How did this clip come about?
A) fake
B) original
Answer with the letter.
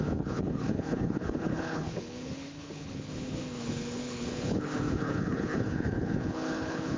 A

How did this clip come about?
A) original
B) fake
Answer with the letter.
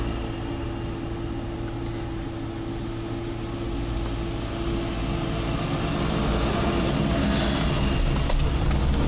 A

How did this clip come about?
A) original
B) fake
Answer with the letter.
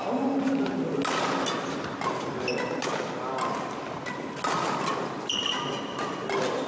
A